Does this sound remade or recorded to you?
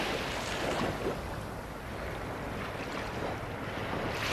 recorded